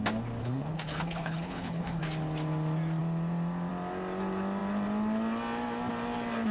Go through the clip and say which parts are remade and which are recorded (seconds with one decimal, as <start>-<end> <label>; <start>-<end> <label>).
0.0-0.4 recorded; 0.4-2.0 remade; 2.0-6.5 recorded